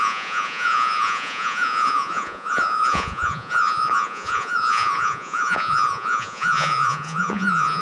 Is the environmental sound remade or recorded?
remade